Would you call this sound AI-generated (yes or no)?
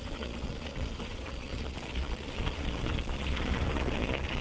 yes